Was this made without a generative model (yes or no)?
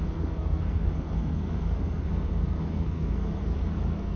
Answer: no